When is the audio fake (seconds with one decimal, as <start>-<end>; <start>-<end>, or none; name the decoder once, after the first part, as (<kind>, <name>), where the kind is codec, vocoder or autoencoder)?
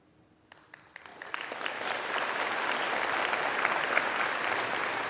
none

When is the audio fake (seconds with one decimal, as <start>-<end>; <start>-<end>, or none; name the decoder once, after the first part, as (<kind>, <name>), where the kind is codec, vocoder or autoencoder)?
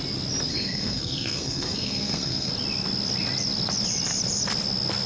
0.5-2.5 (codec, SNAC)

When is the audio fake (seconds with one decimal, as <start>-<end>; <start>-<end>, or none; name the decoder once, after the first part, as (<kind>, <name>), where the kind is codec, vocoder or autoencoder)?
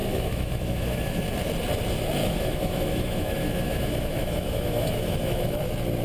0.0-1.2 (autoencoder, DAC-VAE); 2.2-5.6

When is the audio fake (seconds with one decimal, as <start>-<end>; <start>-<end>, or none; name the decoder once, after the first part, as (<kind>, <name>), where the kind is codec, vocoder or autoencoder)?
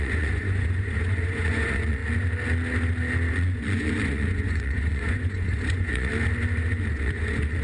0.0-2.0 (vocoder, Vocos); 3.3-6.1; 6.9-7.6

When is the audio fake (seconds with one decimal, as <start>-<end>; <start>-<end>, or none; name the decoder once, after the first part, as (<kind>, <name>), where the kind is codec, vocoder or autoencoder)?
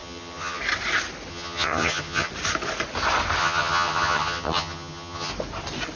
0.0-0.6 (vocoder, HiFi-GAN); 1.3-2.3; 3.4-5.3